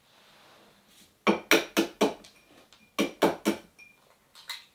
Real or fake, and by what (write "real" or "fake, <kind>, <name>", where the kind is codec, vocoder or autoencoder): real